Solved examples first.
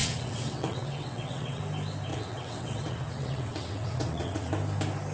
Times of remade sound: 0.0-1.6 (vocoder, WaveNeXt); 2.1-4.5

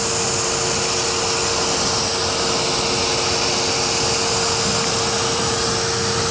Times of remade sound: none

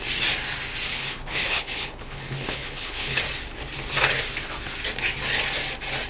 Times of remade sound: 0.9-3.2 (codec, HILCodec)

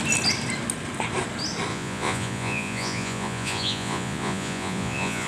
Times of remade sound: 1.7-5.3 (vocoder, Vocos)

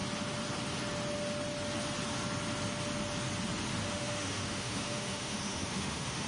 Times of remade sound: 3.8-6.3 (autoencoder, DAC-VAE)

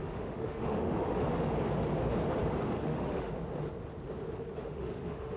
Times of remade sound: 0.0-1.2 (autoencoder, DAC-VAE); 2.8-3.3; 4.6-5.4

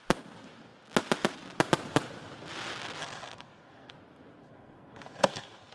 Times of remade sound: 3.0-3.9 (codec, SNAC); 4.4-5.7